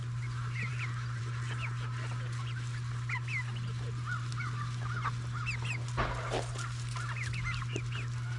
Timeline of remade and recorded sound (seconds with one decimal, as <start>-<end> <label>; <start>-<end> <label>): 0.0-8.4 recorded

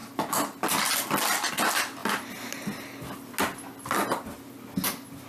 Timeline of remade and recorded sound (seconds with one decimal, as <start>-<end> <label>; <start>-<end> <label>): 0.0-5.3 recorded

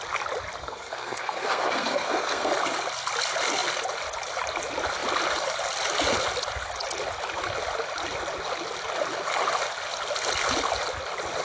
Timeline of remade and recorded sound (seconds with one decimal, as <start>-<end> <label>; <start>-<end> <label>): 0.0-0.6 recorded; 0.6-2.5 remade; 2.5-11.4 recorded

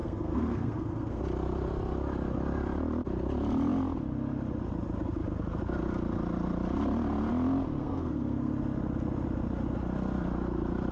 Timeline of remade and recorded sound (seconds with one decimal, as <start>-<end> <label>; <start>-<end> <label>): 0.0-1.2 remade; 1.2-7.8 recorded; 7.8-8.5 remade; 8.5-10.9 recorded

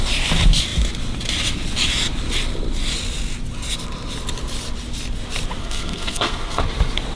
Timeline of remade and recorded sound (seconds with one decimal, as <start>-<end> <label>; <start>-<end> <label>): 0.0-5.6 recorded; 5.6-6.6 remade; 6.6-7.2 recorded